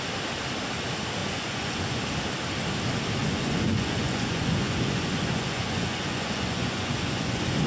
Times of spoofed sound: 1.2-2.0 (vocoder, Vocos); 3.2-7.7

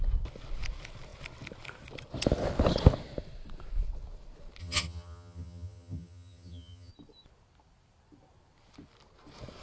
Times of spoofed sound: 4.6-6.9 (vocoder, HiFi-GAN)

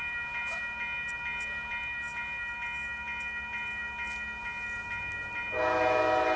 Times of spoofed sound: none

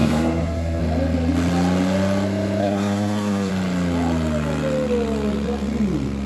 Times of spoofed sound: 0.0-0.8 (codec, SNAC); 2.6-3.5

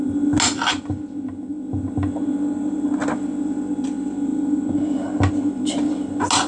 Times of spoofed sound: none